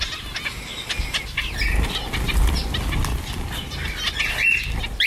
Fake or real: real